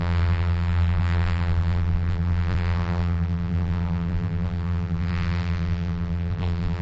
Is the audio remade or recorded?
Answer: remade